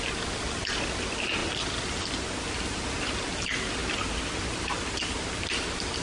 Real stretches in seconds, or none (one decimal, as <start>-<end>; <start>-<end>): 0.0-6.0